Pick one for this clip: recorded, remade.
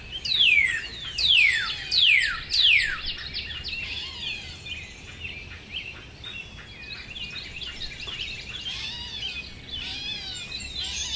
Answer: recorded